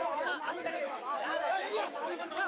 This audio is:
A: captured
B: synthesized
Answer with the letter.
B